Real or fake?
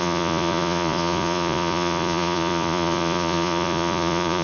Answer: fake